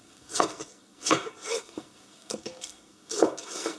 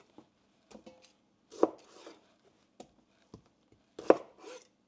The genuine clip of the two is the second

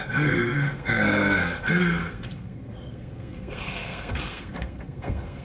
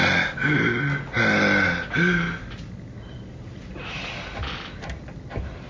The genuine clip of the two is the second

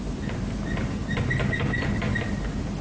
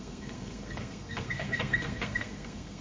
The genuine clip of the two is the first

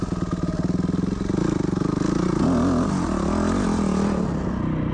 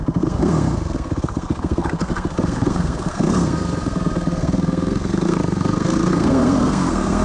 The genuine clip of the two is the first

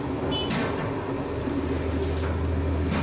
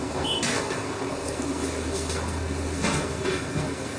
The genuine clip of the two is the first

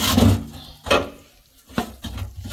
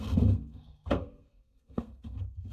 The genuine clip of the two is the first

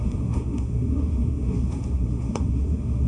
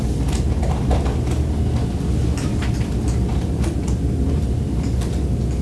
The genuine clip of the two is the second